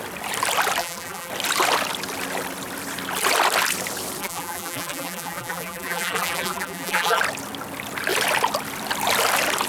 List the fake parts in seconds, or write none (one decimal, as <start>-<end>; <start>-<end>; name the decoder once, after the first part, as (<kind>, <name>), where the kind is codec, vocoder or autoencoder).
0.8-1.3 (vocoder, BigVGAN v2); 4.2-7.2